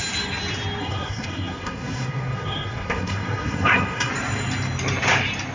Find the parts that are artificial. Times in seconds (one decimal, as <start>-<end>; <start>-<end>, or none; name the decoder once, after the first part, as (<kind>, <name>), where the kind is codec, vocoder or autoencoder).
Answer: 0.8-4.1 (codec, SNAC)